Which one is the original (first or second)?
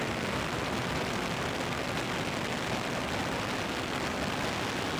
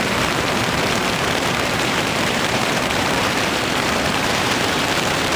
first